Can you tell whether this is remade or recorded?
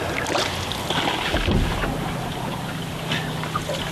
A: recorded